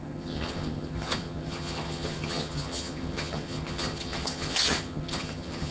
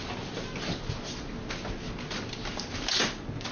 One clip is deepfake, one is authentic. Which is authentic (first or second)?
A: second